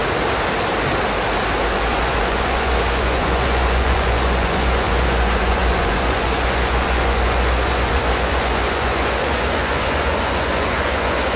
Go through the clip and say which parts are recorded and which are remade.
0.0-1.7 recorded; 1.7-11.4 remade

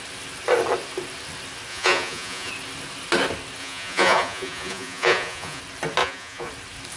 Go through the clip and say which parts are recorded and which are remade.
0.0-1.7 recorded; 1.7-2.5 remade; 2.5-3.6 recorded; 3.6-5.6 remade; 5.6-6.0 recorded; 6.0-6.5 remade; 6.5-7.0 recorded

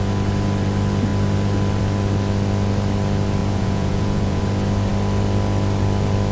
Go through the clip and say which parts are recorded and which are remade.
0.0-3.4 recorded; 3.4-4.4 remade; 4.4-6.3 recorded

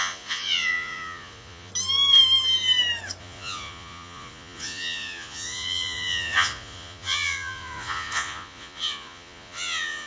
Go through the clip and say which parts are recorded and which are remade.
0.0-1.7 remade; 1.7-3.2 recorded; 3.2-10.1 remade

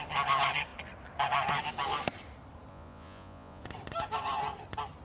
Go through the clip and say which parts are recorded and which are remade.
0.0-2.7 recorded; 2.7-3.6 remade; 3.6-5.0 recorded